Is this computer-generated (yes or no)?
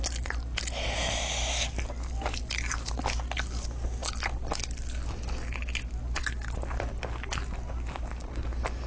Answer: no